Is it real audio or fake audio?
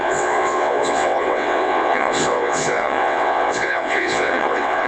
fake